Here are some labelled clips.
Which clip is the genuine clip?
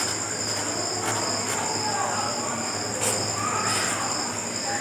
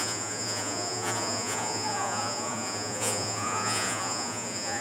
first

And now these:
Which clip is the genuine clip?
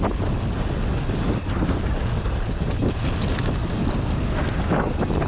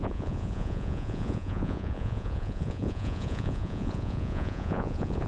first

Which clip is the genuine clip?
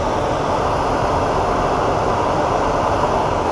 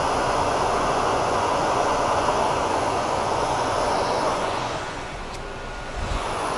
first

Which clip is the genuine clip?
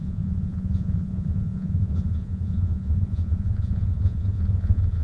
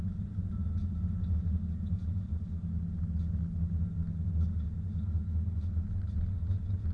second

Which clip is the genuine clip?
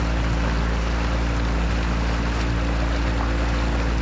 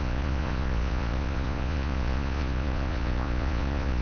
first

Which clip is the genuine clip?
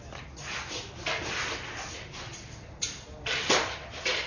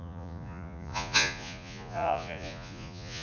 first